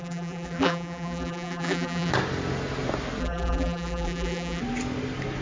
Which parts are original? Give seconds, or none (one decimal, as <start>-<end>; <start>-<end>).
2.1-3.2; 4.6-5.4